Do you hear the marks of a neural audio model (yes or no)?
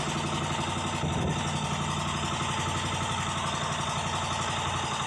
no